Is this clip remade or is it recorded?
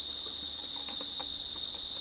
recorded